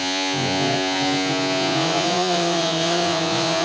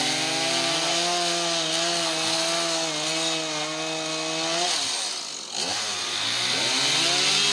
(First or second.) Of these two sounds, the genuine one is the second